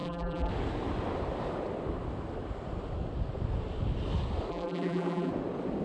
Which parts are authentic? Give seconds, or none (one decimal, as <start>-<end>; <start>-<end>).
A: 0.5-4.5; 5.3-5.8